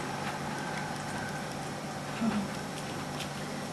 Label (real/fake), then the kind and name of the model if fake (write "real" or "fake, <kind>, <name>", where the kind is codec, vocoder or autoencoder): fake, vocoder, BigVGAN v2